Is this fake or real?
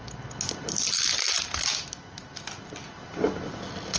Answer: real